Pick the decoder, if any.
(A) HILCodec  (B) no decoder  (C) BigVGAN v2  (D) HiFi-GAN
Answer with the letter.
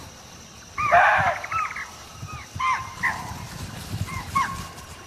C